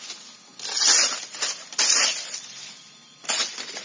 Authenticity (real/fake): real